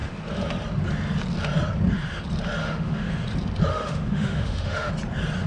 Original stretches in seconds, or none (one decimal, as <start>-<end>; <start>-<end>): 0.0-2.6; 3.1-3.7; 4.9-5.5